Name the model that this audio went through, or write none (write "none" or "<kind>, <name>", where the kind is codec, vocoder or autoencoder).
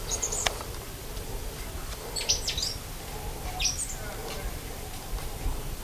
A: none